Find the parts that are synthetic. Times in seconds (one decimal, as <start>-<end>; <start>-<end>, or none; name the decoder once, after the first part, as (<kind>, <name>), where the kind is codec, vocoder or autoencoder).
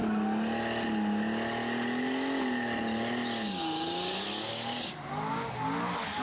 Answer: none